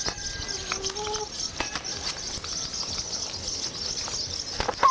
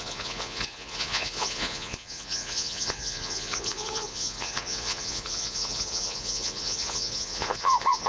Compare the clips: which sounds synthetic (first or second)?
second